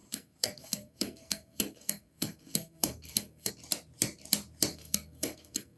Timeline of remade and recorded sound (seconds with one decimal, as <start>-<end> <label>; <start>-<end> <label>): 0.0-3.5 remade; 3.5-4.7 recorded; 4.7-5.8 remade